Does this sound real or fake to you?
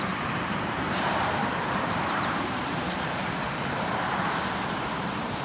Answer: fake